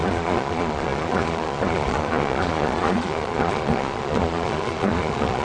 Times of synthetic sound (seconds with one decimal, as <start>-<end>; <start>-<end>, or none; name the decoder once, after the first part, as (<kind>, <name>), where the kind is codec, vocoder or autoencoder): 0.0-5.4 (vocoder, Vocos)